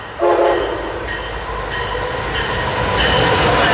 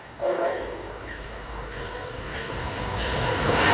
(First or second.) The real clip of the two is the first